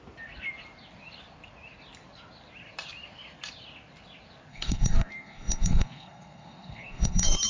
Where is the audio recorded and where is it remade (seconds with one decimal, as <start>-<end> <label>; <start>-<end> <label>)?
0.0-4.5 recorded; 4.5-7.5 remade